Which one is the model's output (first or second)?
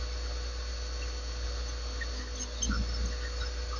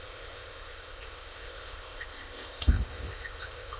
second